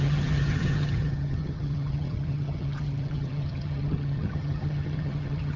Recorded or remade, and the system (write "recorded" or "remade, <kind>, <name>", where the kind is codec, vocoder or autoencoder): remade, vocoder, HiFi-GAN